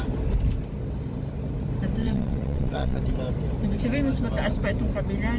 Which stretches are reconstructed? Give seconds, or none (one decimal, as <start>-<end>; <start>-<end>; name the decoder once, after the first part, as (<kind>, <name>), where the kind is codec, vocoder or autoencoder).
2.0-3.0 (vocoder, WaveNeXt)